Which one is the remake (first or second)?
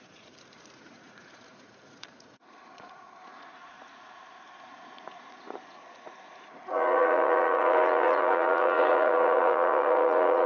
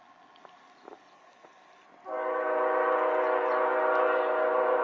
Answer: first